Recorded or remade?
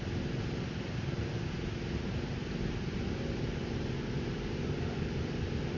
recorded